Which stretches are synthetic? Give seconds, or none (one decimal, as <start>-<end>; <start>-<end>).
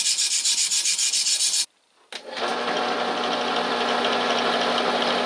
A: none